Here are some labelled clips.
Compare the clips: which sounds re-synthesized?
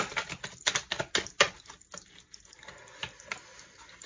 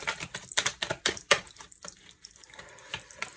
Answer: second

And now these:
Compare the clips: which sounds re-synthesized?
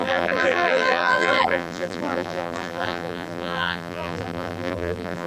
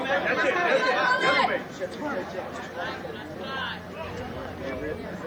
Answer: first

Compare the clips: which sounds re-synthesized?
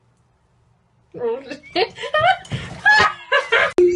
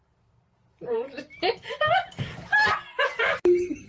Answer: second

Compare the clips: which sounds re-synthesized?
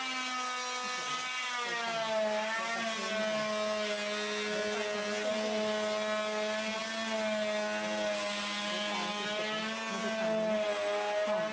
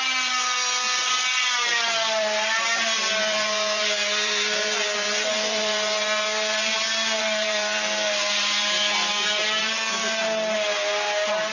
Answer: second